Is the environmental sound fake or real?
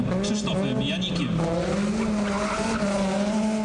real